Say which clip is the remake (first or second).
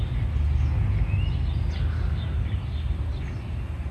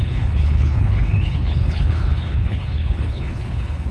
second